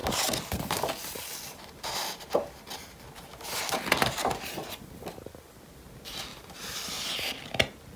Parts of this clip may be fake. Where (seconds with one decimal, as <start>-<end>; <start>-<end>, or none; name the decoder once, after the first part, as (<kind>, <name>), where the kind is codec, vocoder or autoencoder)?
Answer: none